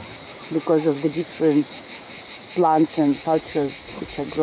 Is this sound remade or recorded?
remade